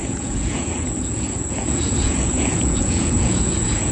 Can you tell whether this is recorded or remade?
remade